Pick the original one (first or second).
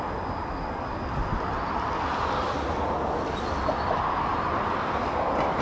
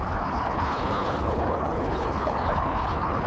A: first